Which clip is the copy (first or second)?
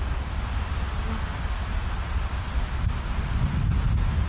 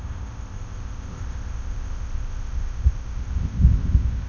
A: second